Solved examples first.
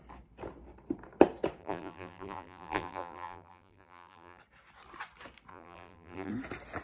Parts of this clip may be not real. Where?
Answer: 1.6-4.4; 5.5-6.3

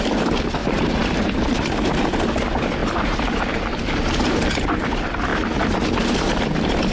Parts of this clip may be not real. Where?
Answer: 0.6-1.4; 2.8-3.8